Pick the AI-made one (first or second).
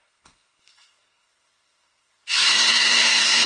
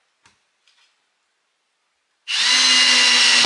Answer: first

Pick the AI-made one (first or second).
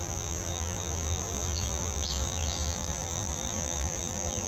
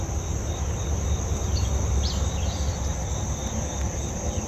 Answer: first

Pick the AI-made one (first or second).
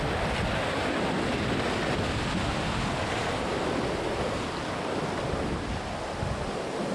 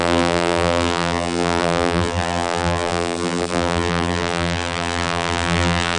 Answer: second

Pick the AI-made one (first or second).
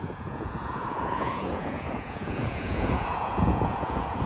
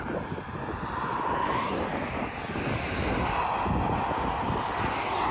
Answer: first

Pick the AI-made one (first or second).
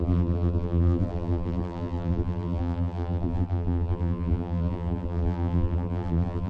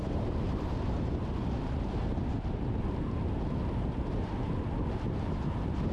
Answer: first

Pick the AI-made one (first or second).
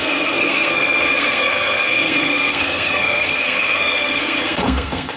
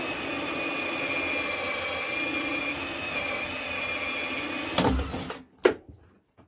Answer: first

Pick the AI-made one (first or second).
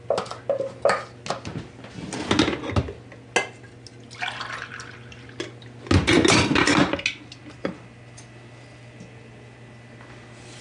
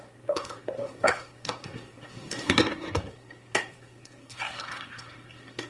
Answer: second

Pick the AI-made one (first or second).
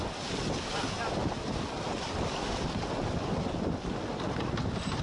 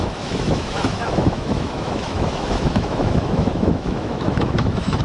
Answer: second